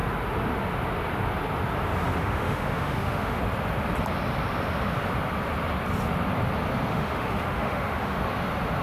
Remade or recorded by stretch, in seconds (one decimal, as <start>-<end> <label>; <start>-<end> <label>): 0.0-2.2 recorded; 2.2-3.4 remade; 3.4-6.9 recorded; 6.9-8.2 remade; 8.2-8.8 recorded